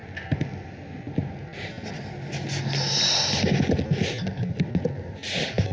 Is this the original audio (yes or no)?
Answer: yes